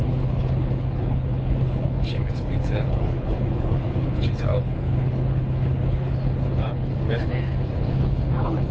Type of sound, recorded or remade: remade